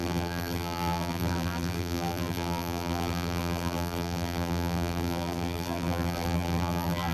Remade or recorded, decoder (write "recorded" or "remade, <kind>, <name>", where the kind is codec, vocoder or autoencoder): remade, vocoder, BigVGAN v2